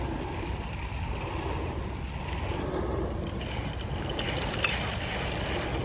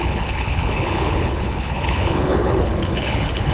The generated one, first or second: second